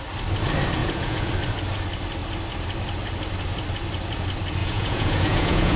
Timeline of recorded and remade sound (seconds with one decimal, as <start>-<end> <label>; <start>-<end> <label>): 0.0-0.8 recorded; 0.8-1.3 remade; 1.3-4.6 recorded; 4.6-5.8 remade